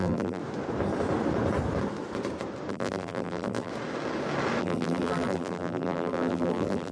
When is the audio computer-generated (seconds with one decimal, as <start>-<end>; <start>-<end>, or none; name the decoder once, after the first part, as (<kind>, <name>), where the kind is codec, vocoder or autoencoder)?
0.0-0.4 (vocoder, BigVGAN v2); 2.7-3.7; 4.6-6.9